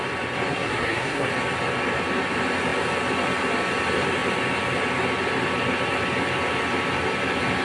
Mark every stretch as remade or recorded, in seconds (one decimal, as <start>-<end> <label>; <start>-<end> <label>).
0.0-0.5 recorded; 0.5-1.3 remade; 1.3-7.6 recorded